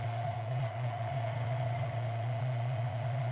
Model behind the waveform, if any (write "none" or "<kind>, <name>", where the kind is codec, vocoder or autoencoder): vocoder, Vocos